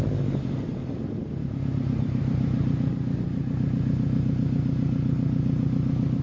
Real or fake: real